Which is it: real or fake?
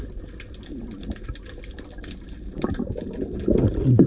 real